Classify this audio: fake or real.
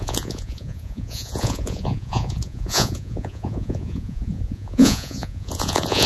fake